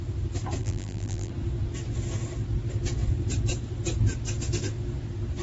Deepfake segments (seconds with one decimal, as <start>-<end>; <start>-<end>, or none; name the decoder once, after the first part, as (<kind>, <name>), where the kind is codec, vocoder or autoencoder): 0.6-1.3 (vocoder, BigVGAN v2)